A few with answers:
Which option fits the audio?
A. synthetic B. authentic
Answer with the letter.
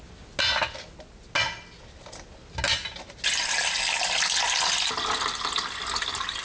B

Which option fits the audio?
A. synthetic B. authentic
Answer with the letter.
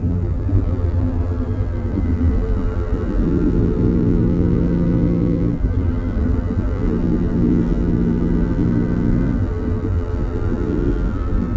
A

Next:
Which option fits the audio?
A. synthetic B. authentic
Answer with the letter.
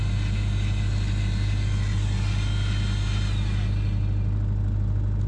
B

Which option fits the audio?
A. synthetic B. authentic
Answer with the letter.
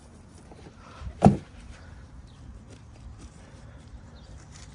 A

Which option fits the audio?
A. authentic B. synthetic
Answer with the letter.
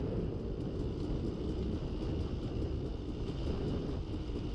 A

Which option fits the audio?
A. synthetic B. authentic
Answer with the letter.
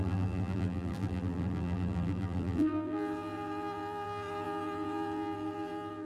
A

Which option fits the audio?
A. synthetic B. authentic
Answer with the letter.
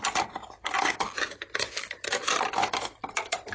A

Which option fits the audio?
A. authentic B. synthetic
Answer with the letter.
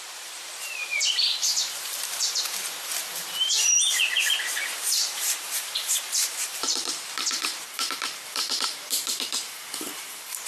B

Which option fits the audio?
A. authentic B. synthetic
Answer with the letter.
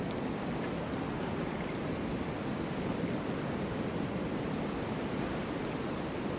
B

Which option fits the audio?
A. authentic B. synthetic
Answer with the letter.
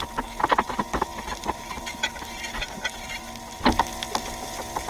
A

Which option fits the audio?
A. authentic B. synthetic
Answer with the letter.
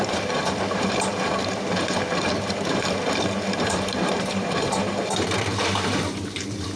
B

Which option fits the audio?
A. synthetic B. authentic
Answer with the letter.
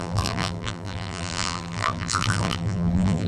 A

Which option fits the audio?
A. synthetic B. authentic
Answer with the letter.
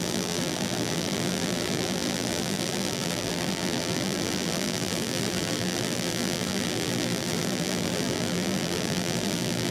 A